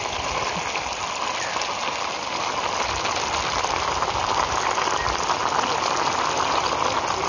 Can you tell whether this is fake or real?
real